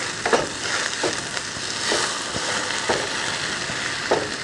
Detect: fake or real real